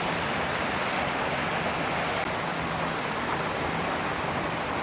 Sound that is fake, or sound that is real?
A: real